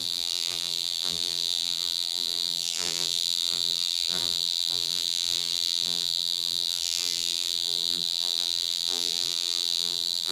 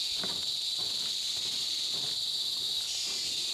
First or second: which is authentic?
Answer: second